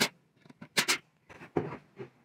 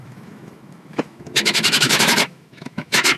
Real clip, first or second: first